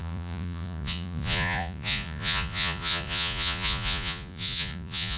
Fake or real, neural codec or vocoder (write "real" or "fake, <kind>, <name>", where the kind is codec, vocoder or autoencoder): fake, vocoder, Vocos